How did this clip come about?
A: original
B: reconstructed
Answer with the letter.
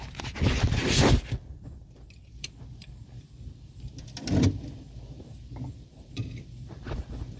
B